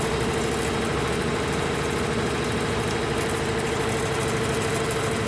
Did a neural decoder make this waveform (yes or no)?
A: no